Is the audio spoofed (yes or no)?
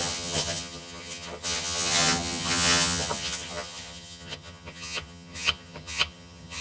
yes